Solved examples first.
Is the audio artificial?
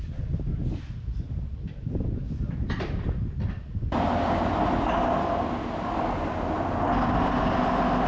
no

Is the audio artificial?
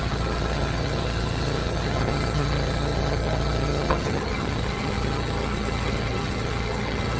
yes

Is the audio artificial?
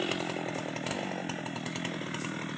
no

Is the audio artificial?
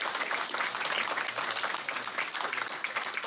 no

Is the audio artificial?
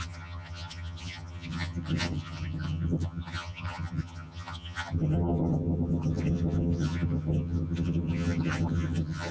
yes